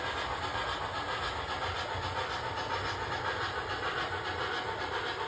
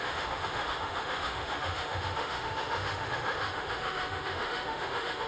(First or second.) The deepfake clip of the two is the second